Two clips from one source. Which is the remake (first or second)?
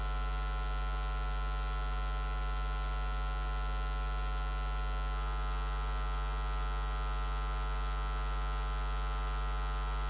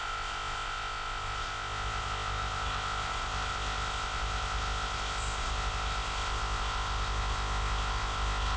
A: second